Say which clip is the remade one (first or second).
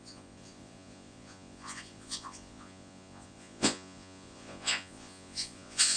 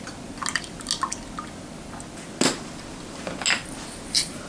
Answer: first